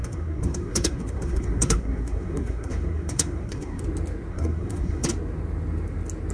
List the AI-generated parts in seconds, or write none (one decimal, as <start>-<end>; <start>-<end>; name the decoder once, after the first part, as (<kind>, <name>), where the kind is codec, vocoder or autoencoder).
0.0-3.8 (codec, SNAC); 4.3-5.1